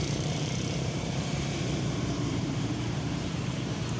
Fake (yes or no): yes